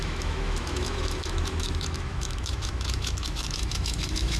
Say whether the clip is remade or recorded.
remade